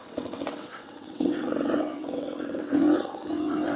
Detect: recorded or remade remade